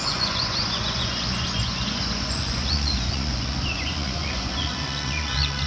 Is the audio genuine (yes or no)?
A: no